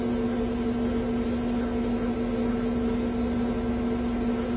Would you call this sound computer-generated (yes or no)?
no